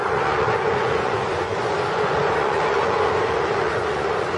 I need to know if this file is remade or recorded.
remade